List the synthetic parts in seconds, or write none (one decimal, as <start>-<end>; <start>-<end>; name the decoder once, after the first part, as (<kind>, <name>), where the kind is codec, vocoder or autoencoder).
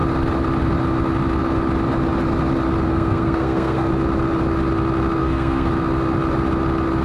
2.9-3.9 (codec, SNAC); 5.2-5.7